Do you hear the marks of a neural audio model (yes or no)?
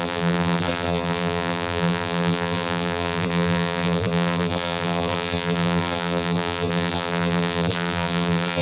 yes